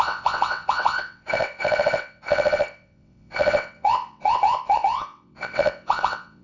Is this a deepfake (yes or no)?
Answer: yes